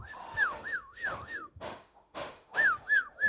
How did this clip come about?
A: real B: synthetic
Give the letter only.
B